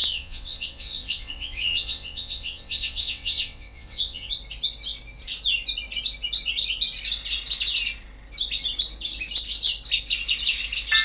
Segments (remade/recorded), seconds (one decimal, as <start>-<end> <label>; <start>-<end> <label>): 0.0-4.3 remade; 4.3-11.0 recorded